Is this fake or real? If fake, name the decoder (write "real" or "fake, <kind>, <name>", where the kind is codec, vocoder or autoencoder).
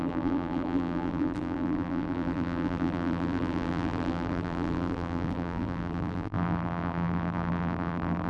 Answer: fake, vocoder, BigVGAN v2